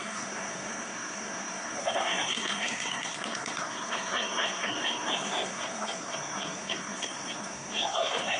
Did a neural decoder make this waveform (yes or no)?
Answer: yes